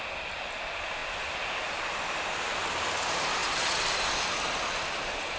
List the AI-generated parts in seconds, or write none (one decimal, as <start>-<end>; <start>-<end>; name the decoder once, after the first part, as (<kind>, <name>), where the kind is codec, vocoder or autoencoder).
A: none